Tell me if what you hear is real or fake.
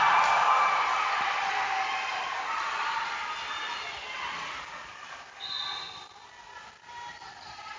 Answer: real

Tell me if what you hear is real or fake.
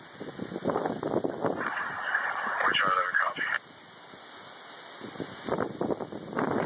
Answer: real